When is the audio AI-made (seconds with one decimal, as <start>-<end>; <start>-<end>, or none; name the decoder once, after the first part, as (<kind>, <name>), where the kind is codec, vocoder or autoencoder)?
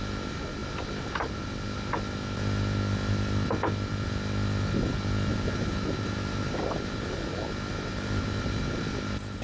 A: 5.3-7.1 (vocoder, BigVGAN v2); 7.7-8.8